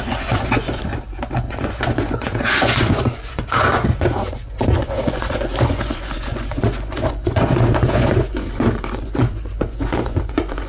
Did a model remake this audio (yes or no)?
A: yes